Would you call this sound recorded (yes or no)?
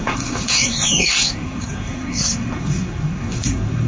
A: no